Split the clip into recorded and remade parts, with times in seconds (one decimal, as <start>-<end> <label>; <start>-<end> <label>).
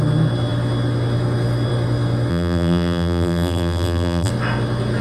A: 0.0-2.3 recorded; 2.3-4.3 remade; 4.3-5.0 recorded